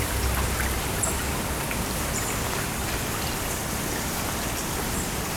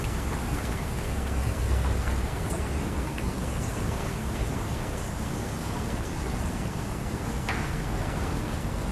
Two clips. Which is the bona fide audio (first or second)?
first